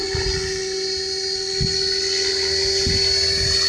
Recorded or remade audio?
recorded